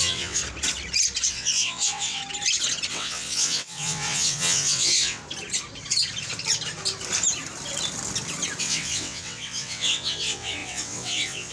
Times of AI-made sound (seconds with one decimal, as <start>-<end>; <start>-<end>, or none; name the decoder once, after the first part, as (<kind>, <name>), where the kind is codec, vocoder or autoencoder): 0.0-0.4 (vocoder, WaveNeXt); 1.3-2.2; 2.9-5.2; 8.6-11.5